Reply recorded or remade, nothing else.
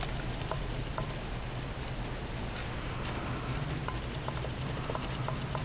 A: recorded